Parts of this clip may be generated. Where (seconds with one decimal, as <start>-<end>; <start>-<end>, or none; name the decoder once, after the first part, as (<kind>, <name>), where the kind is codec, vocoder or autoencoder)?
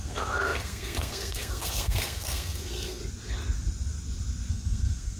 0.0-3.0 (codec, SNAC); 4.5-5.2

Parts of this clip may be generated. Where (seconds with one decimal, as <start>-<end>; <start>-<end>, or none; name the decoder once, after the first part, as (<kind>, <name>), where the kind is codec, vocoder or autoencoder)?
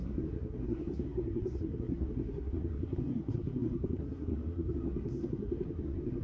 0.0-6.2 (codec, SNAC)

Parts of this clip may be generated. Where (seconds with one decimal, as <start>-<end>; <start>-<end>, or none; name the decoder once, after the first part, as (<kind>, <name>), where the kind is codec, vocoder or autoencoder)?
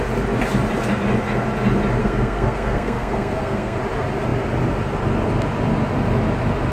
2.0-3.8 (codec, SNAC)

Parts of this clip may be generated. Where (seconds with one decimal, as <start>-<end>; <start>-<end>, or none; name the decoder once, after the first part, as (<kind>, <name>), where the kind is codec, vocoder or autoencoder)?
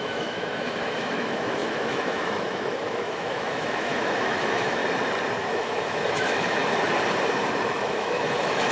0.0-4.8 (autoencoder, DAC-VAE); 5.5-6.6; 7.6-8.7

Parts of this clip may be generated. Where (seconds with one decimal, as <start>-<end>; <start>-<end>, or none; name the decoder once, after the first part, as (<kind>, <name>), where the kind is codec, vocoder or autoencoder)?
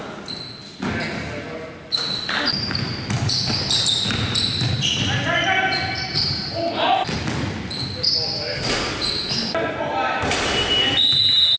none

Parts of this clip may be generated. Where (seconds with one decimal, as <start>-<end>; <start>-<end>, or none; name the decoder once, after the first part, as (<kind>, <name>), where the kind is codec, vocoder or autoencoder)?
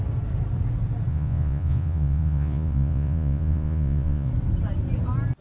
1.1-4.3 (vocoder, Vocos)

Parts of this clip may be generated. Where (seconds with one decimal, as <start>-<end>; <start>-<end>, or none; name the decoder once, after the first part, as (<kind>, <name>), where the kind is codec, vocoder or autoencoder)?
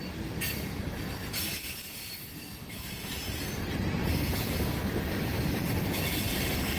1.5-2.1 (vocoder, Vocos); 4.0-4.7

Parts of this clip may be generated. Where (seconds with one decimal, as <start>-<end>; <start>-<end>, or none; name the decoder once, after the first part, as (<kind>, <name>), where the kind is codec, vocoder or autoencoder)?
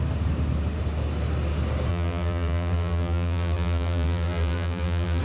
1.9-5.2 (vocoder, BigVGAN v2)